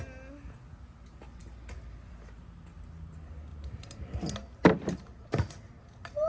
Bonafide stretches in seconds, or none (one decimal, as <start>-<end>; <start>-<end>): 0.0-6.3